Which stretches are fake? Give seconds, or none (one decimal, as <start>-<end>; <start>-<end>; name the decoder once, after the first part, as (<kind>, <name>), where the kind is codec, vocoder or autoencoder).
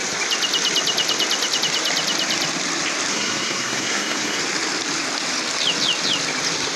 3.1-4.4 (codec, SNAC)